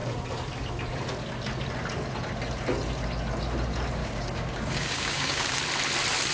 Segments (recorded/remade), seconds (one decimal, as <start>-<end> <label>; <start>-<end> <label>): 0.0-4.0 recorded; 4.0-5.6 remade; 5.6-6.3 recorded